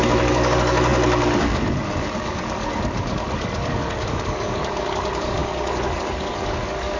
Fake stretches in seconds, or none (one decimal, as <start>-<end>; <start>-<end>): 0.0-7.0